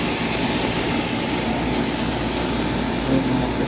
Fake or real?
real